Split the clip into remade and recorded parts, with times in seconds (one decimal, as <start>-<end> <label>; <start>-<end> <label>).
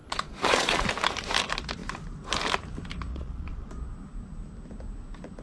0.0-0.9 remade; 0.9-3.1 recorded; 3.1-3.7 remade; 3.7-5.4 recorded